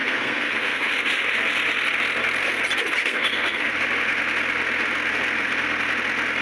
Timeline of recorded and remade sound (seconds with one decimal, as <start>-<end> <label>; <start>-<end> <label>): 0.0-0.9 remade; 0.9-3.0 recorded; 3.0-3.7 remade; 3.7-6.4 recorded